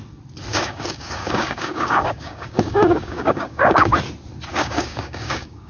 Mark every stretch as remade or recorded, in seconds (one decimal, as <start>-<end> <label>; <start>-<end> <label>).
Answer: 0.0-0.5 recorded; 0.5-3.9 remade; 3.9-4.5 recorded; 4.5-5.7 remade